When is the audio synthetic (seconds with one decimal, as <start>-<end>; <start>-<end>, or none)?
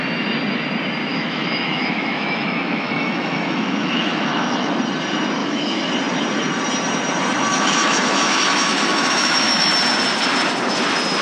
1.1-4.7; 5.4-5.9; 7.5-9.7